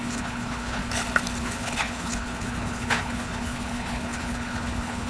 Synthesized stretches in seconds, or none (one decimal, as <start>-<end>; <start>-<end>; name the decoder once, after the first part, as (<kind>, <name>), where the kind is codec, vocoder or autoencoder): 0.0-0.8 (codec, HILCodec); 1.4-5.1